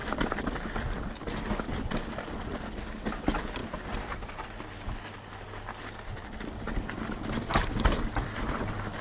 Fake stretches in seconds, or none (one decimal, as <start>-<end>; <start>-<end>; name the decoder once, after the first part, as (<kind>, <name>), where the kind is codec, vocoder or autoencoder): 3.6-4.6 (vocoder, BigVGAN v2)